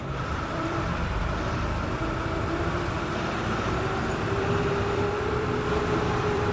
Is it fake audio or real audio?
fake